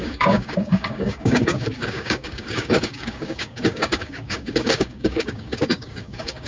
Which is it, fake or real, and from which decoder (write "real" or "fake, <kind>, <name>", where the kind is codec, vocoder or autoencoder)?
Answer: fake, codec, DAC